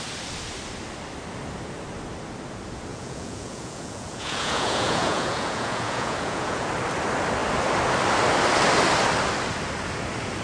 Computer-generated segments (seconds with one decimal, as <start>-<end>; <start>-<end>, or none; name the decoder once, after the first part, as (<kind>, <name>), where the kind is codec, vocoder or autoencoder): 2.9-6.7 (vocoder, Vocos)